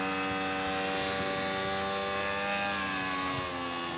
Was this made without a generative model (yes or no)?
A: yes